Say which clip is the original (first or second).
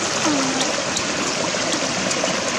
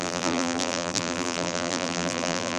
first